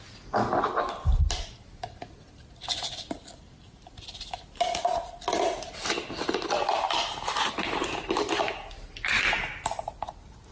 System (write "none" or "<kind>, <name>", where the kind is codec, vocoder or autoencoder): none